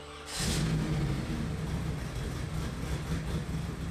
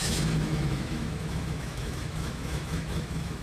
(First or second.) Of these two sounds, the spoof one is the second